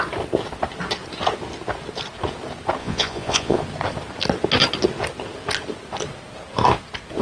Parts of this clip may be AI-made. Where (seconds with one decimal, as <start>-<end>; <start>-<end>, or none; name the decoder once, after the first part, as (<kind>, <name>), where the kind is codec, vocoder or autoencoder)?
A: 2.8-3.6 (vocoder, Vocos)